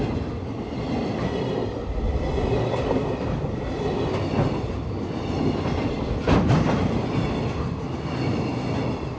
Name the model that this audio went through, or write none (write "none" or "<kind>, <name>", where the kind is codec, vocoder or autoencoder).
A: none